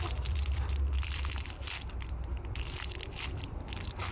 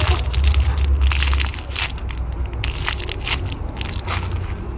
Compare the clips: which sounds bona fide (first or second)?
second